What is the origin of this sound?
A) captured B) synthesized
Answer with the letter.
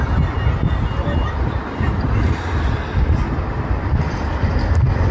A